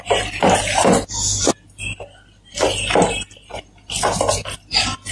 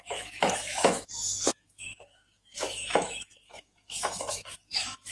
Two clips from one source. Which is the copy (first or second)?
second